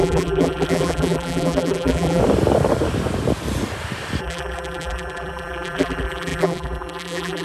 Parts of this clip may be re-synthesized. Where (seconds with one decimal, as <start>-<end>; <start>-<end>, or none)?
0.0-2.2; 4.2-7.4